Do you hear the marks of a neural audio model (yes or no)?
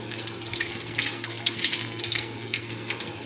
yes